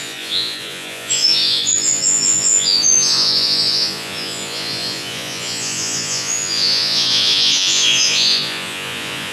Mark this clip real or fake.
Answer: fake